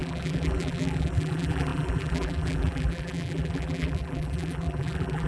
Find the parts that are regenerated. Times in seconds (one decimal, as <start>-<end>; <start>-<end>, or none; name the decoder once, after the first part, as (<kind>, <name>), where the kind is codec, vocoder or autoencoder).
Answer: 0.0-5.3 (vocoder, BigVGAN v2)